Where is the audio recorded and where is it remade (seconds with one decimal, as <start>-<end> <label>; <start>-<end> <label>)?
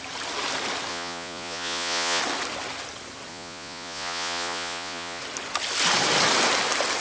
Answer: 0.0-0.9 recorded; 0.9-2.2 remade; 2.2-3.3 recorded; 3.3-5.2 remade; 5.2-7.0 recorded